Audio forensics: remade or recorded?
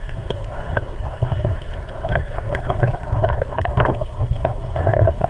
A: remade